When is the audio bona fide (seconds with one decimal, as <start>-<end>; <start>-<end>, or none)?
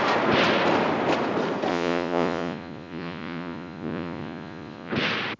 0.0-1.7; 4.9-5.4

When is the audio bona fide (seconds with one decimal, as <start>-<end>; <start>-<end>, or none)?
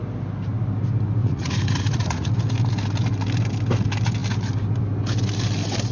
0.0-1.2; 2.3-5.9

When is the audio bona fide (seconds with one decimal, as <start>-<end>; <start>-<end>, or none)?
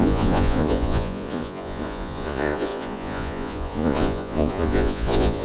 none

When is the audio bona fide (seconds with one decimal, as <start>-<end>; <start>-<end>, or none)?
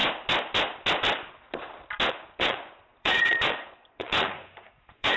0.0-2.1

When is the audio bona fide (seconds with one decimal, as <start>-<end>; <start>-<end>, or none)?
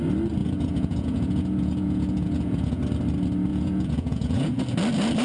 0.0-0.4; 2.8-3.5; 4.6-5.2